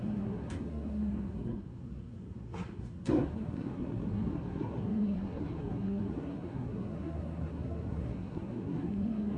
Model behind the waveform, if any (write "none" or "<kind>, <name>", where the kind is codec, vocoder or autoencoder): codec, SNAC